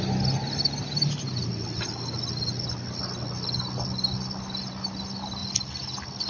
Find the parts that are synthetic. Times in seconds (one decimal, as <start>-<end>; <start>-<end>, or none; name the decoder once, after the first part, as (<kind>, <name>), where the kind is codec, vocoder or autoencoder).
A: none